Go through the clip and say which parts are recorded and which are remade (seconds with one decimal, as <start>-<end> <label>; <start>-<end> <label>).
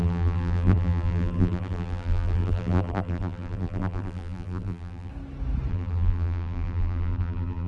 0.0-5.1 remade; 5.1-5.7 recorded; 5.7-7.7 remade